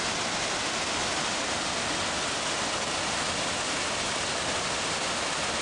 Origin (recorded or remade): recorded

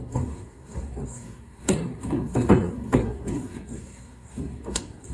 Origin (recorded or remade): remade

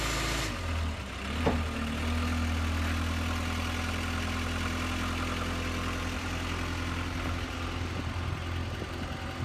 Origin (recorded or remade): recorded